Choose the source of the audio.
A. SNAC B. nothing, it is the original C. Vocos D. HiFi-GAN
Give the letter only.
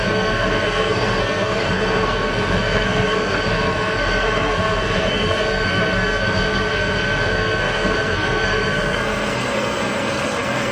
A